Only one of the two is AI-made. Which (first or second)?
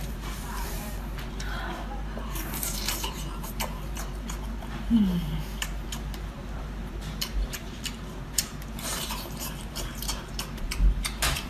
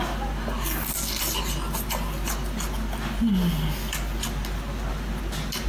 first